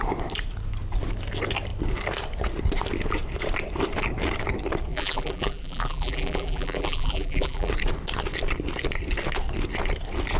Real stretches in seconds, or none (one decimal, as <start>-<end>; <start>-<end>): 0.0-4.9; 7.7-10.4